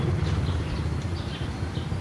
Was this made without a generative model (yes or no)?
yes